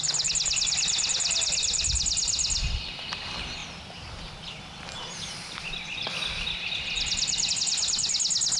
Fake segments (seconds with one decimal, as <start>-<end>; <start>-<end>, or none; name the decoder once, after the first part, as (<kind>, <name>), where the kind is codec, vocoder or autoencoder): none